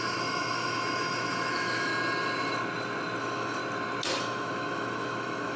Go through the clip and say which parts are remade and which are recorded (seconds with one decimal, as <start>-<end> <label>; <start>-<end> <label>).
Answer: 0.0-1.9 remade; 1.9-3.2 recorded; 3.2-3.6 remade; 3.6-4.2 recorded; 4.2-5.6 remade